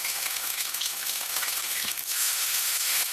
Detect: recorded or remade remade